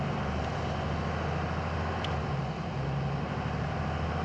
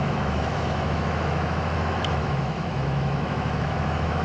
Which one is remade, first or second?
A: second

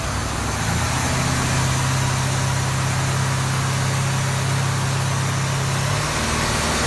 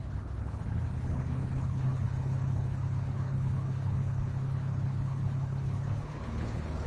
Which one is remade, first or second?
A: second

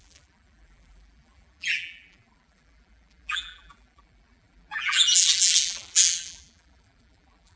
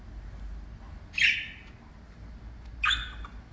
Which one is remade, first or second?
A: first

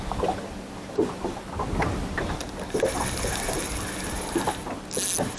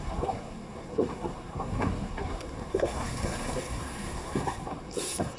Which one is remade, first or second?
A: second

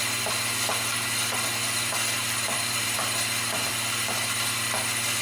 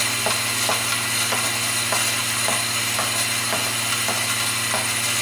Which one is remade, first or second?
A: first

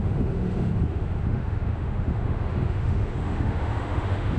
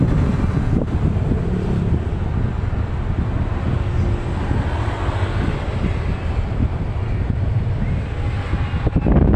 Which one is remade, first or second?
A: first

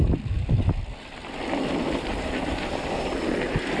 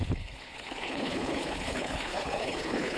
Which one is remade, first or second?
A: second